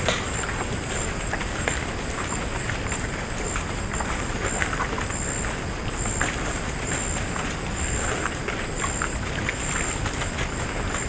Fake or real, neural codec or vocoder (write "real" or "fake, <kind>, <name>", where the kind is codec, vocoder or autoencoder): real